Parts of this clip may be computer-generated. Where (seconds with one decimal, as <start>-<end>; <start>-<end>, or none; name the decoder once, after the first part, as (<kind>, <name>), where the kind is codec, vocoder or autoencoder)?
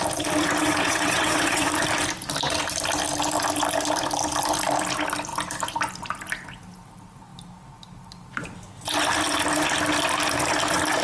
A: 0.6-1.7 (vocoder, WaveNeXt)